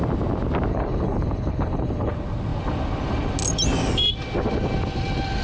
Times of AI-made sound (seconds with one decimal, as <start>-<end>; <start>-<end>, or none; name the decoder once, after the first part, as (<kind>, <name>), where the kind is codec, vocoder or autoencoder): 0.7-2.1 (codec, HILCodec)